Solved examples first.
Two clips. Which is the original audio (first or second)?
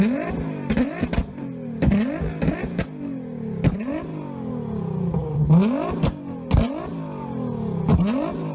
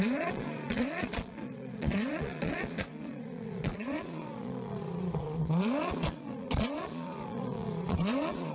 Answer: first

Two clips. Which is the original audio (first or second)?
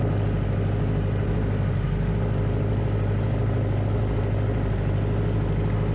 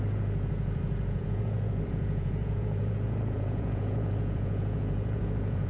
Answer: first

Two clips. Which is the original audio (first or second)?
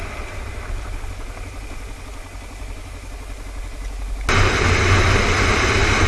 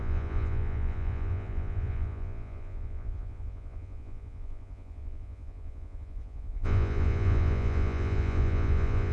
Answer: first